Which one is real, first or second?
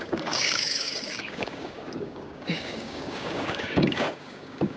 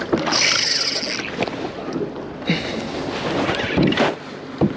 second